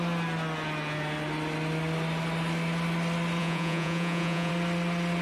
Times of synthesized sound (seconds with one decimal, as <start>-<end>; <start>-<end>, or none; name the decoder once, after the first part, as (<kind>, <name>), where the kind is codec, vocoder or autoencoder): 3.4-4.5 (vocoder, Vocos)